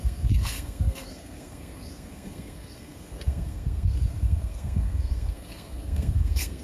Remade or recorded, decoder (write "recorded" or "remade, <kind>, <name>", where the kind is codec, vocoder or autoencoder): remade, codec, SNAC